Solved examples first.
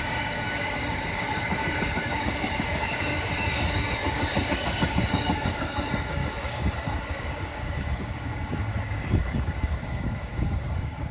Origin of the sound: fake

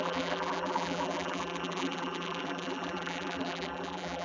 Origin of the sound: fake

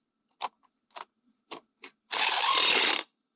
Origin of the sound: real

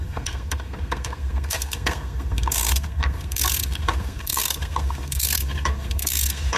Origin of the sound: fake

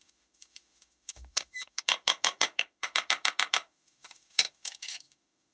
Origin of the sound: fake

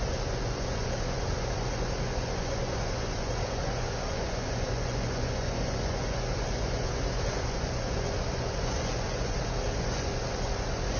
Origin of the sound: fake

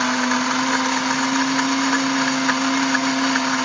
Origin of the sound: real